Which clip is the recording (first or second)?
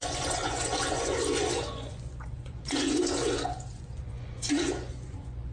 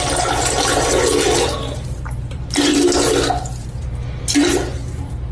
second